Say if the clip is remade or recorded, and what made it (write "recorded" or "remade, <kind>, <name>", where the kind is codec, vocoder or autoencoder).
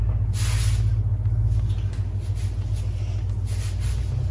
recorded